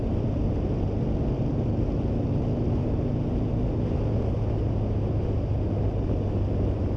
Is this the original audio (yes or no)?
yes